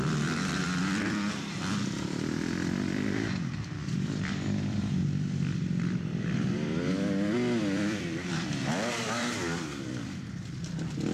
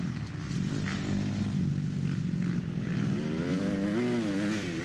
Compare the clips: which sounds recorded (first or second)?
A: second